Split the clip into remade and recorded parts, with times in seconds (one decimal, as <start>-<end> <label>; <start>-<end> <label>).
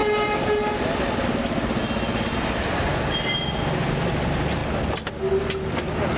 0.0-6.2 recorded